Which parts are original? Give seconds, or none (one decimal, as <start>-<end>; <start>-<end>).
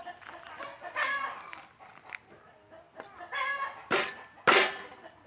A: 0.0-5.3